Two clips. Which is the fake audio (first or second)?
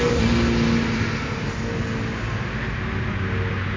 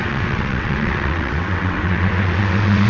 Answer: second